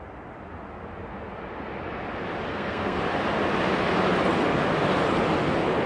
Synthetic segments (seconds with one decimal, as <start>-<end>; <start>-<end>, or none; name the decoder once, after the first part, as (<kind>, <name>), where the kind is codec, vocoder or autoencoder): 2.5-3.0 (codec, SNAC)